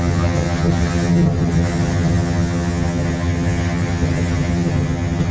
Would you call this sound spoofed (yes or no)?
yes